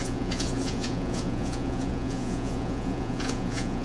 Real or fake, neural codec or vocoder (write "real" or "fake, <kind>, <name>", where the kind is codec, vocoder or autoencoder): fake, vocoder, Vocos